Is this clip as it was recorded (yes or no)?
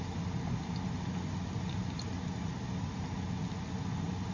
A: yes